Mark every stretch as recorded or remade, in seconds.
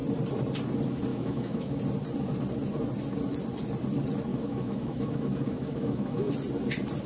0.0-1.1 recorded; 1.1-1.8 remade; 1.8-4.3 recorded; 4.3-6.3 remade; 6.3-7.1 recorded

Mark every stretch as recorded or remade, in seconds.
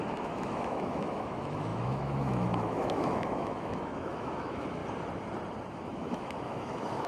0.0-4.8 remade; 4.8-5.7 recorded; 5.7-7.1 remade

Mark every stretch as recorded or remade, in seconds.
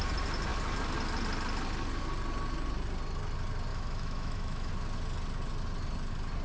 0.0-3.7 recorded; 3.7-4.7 remade; 4.7-6.4 recorded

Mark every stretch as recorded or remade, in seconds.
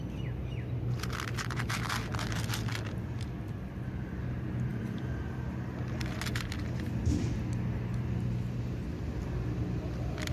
0.0-10.3 recorded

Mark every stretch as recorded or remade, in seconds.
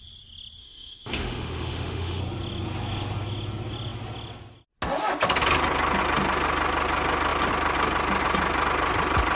0.0-0.6 recorded; 0.6-2.2 remade; 2.2-9.4 recorded